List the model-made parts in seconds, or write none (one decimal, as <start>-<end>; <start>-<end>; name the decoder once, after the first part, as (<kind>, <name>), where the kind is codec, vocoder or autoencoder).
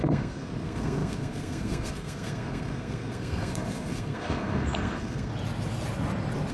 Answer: 0.0-5.3 (codec, SNAC)